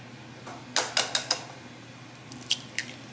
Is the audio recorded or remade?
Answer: recorded